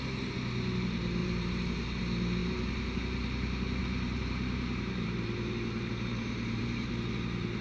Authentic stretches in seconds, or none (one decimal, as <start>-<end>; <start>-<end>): 0.0-1.2; 2.0-2.4; 3.0-3.8; 6.9-7.6